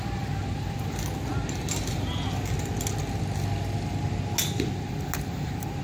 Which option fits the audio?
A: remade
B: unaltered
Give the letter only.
B